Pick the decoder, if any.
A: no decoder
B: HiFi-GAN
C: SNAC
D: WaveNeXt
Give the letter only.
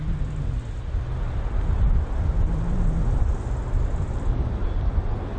A